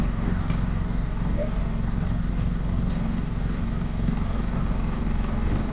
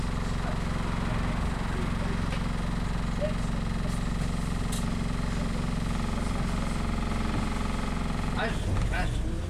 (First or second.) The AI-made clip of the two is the first